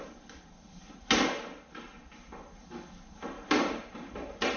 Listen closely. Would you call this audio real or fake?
real